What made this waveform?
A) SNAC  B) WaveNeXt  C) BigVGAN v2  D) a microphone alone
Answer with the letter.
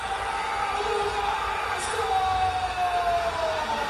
D